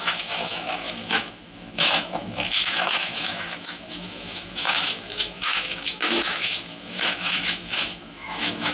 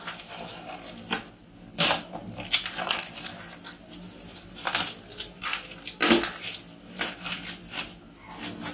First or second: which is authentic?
second